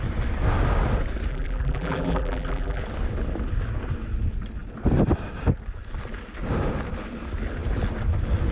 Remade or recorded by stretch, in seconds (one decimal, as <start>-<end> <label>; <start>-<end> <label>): 0.0-1.3 recorded; 1.3-2.8 remade; 2.8-8.5 recorded